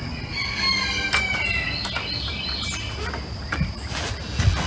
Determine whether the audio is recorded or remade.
recorded